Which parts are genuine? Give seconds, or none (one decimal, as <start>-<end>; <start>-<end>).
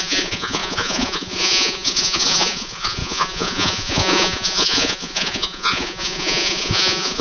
none